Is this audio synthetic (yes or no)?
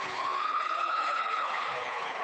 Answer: yes